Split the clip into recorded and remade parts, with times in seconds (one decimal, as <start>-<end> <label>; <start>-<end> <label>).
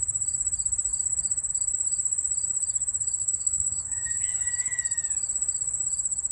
0.0-3.2 recorded; 3.2-4.3 remade; 4.3-6.3 recorded